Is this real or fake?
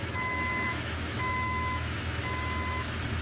fake